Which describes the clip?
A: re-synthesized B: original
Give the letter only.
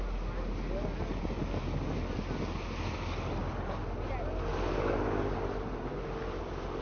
B